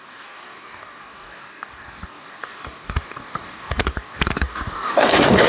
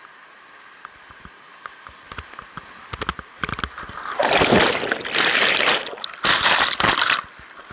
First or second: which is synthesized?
first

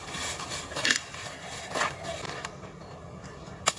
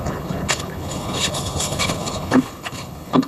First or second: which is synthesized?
second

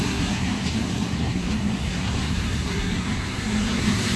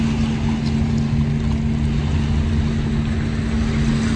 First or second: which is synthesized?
first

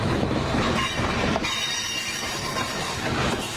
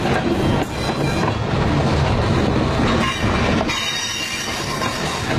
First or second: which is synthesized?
first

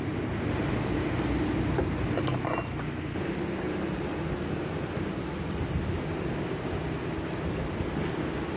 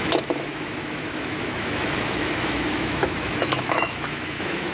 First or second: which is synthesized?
second